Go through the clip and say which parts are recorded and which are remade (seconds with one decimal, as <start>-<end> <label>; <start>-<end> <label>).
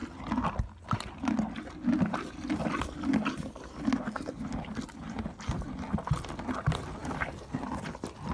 0.0-8.3 recorded